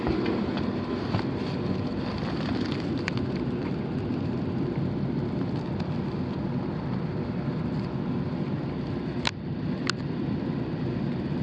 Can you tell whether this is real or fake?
real